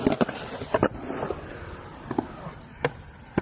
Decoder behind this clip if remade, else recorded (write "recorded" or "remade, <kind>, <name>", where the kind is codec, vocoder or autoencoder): recorded